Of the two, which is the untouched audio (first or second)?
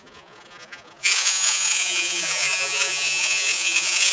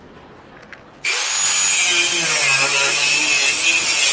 second